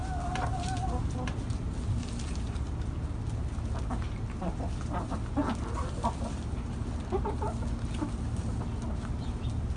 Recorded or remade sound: recorded